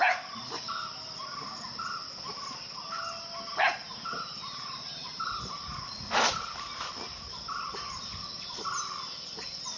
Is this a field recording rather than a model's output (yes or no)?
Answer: yes